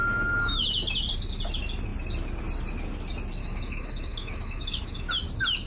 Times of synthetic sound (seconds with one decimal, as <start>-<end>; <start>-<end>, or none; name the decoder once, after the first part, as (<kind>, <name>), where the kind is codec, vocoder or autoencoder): 0.0-0.7 (autoencoder, DAC-VAE); 3.4-5.1